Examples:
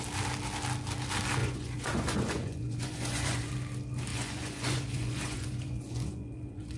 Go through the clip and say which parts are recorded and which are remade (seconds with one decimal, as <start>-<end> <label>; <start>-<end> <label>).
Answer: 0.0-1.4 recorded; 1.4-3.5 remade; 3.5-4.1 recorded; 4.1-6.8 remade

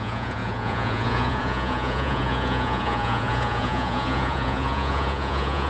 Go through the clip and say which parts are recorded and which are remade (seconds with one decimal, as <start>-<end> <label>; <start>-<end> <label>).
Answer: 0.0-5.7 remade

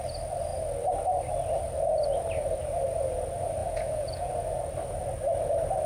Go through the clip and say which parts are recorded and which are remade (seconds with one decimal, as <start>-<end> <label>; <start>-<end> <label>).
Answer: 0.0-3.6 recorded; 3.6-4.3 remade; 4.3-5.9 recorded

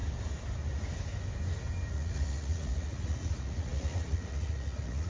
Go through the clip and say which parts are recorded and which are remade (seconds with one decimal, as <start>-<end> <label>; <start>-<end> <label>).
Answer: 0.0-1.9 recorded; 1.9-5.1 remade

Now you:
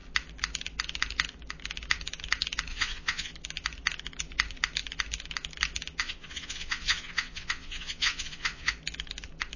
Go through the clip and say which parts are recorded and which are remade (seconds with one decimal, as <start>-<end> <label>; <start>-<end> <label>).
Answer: 0.0-2.7 recorded; 2.7-3.3 remade; 3.3-6.0 recorded; 6.0-8.7 remade; 8.7-9.6 recorded